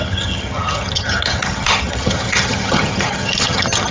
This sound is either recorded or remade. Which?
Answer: remade